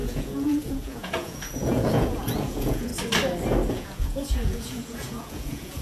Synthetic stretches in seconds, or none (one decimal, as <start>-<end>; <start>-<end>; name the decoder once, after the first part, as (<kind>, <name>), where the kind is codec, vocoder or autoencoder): 0.0-2.9 (vocoder, Vocos); 3.7-5.8